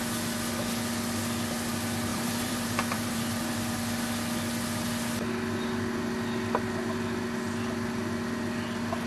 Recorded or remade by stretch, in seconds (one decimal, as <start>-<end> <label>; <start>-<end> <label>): 0.0-2.1 recorded; 2.1-3.2 remade; 3.2-9.1 recorded